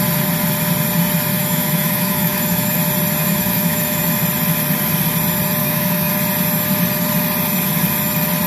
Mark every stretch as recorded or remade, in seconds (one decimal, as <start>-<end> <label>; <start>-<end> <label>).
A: 0.0-1.3 recorded; 1.3-2.8 remade; 2.8-3.2 recorded; 3.2-4.0 remade; 4.0-5.6 recorded; 5.6-6.1 remade; 6.1-8.5 recorded